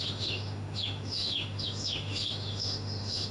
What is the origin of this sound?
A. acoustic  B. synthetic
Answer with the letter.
B